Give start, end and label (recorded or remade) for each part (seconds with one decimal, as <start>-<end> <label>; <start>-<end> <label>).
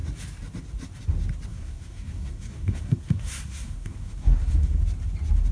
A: 0.0-1.5 recorded; 1.5-4.8 remade; 4.8-5.5 recorded